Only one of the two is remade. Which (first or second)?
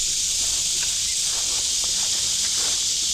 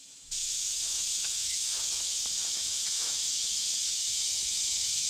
second